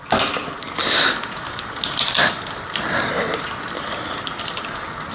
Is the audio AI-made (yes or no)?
no